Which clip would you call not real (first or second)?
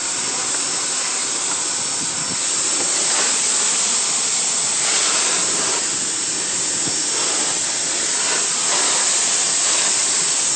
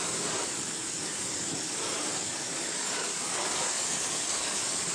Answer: second